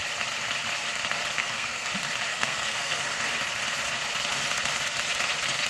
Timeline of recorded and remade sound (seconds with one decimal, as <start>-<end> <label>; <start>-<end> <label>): 0.0-1.4 recorded; 1.4-1.9 remade; 1.9-2.3 recorded; 2.3-3.0 remade; 3.0-5.7 recorded